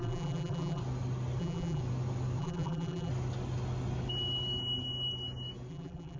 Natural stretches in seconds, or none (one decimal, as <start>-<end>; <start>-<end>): 0.8-1.4; 1.8-2.4; 3.1-5.7